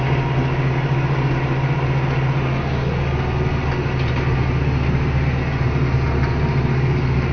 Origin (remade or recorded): recorded